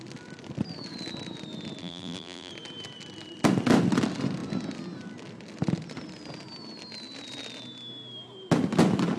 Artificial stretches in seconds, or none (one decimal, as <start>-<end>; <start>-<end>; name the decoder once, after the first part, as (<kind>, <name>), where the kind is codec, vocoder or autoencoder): 1.8-2.5 (vocoder, BigVGAN v2)